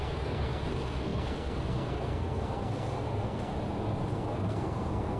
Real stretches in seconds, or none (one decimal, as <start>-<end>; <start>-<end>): 3.5-4.1